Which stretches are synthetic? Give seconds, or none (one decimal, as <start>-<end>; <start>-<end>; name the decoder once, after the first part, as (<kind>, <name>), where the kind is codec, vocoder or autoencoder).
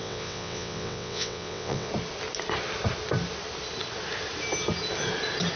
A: 0.0-1.9 (vocoder, WaveNeXt)